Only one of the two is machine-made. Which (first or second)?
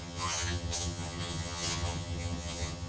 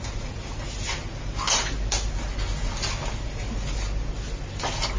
first